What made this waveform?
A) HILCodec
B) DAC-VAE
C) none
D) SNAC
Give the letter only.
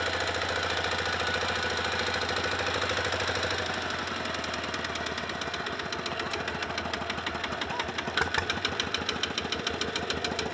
C